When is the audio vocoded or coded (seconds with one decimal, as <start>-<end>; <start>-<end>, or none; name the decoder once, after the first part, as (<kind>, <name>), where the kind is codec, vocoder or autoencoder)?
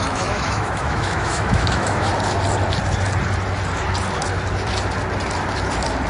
0.0-2.1 (autoencoder, DAC-VAE)